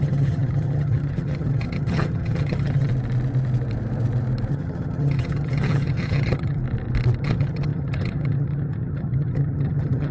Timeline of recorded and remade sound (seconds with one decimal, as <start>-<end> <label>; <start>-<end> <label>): 0.0-2.9 remade; 2.9-4.5 recorded; 4.5-6.6 remade; 6.6-7.2 recorded; 7.2-10.1 remade